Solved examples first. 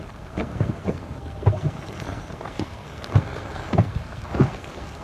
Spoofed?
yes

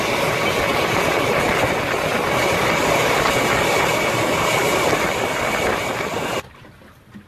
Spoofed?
no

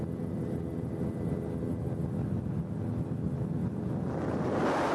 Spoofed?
no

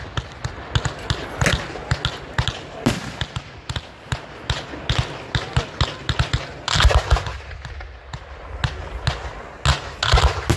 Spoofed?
no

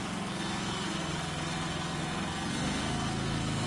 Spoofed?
yes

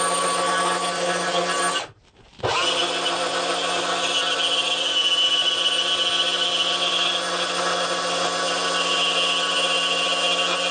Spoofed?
no